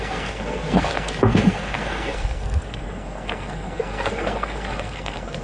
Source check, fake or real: fake